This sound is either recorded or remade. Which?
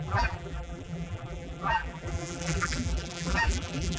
remade